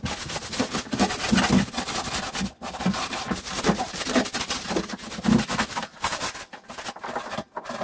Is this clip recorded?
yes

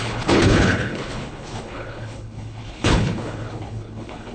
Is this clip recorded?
no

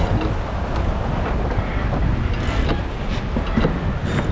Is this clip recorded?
yes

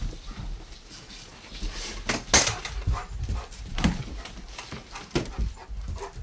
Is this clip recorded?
yes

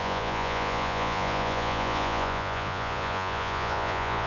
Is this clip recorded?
no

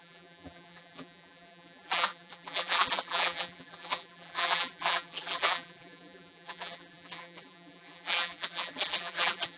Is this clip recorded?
no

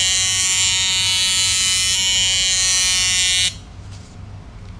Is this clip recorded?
yes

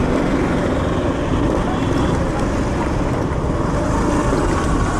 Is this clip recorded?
yes